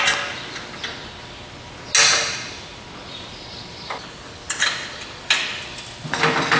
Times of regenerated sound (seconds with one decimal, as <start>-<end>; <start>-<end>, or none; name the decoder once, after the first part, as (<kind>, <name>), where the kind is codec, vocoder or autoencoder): none